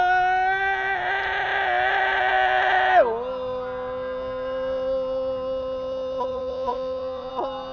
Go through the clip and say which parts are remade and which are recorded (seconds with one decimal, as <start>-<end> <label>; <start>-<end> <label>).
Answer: 0.0-6.3 recorded; 6.3-7.3 remade; 7.3-7.7 recorded